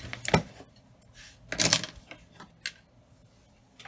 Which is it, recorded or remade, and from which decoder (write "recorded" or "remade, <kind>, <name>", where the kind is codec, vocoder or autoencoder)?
recorded